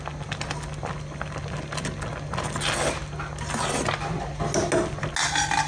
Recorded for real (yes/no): yes